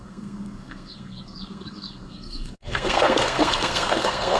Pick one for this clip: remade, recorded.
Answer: remade